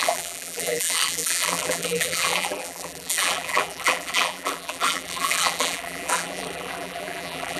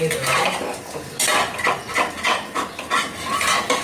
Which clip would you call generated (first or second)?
first